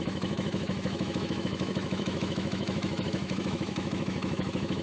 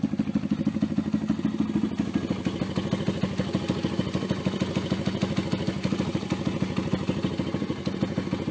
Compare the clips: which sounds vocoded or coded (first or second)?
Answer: first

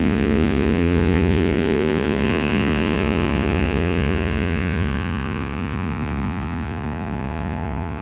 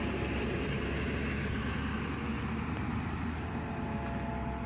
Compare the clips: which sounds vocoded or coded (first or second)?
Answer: first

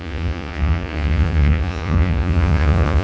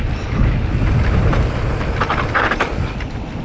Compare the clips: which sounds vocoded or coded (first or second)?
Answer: first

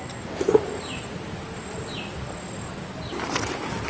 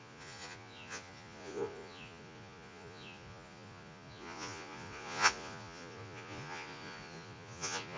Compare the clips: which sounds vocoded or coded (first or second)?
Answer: second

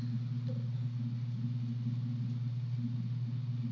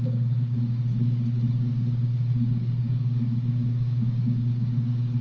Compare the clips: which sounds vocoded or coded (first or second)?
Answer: second